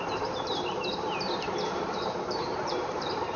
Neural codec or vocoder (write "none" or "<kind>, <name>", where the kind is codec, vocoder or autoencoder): vocoder, BigVGAN v2